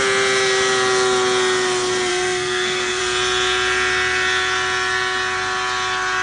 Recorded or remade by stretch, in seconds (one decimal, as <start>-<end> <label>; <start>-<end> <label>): 0.0-2.1 recorded; 2.1-3.0 remade; 3.0-6.2 recorded